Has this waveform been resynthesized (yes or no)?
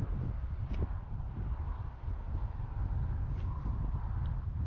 no